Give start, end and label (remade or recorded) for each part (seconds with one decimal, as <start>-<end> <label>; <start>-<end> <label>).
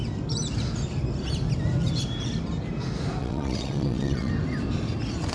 0.0-3.2 recorded; 3.2-4.3 remade; 4.3-5.3 recorded